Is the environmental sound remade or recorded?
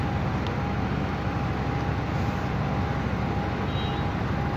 recorded